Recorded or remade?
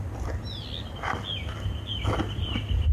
recorded